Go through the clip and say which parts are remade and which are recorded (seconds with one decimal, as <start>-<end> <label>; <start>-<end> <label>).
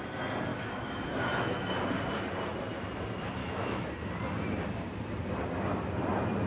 0.0-0.5 recorded; 0.5-1.7 remade; 1.7-3.4 recorded; 3.4-3.9 remade; 3.9-6.5 recorded